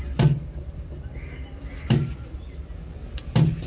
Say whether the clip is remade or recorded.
recorded